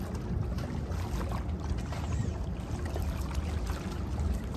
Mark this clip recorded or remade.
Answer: recorded